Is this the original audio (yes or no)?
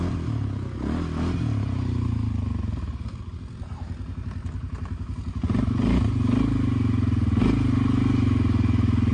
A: yes